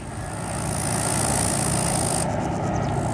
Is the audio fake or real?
real